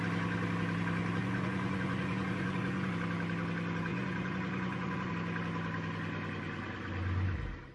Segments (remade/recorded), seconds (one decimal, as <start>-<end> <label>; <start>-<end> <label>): 0.0-1.2 recorded; 1.2-2.9 remade; 2.9-3.9 recorded; 3.9-5.1 remade; 5.1-7.7 recorded